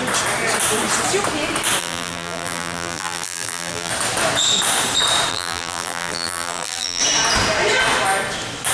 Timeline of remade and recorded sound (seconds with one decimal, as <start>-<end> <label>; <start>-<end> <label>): 0.0-1.8 recorded; 1.8-3.9 remade; 3.9-5.3 recorded; 5.3-7.0 remade; 7.0-8.7 recorded